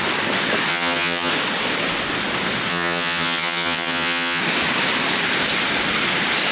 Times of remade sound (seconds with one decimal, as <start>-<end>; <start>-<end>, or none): 0.7-1.3; 2.7-4.4